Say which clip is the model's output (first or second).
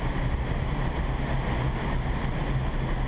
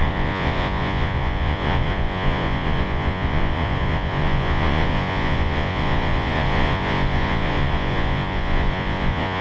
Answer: second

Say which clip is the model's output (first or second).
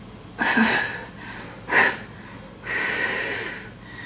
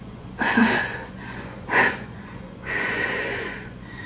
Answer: second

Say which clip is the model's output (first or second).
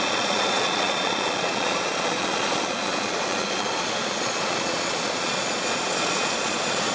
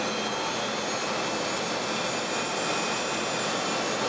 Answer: first